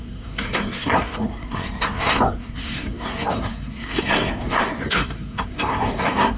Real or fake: fake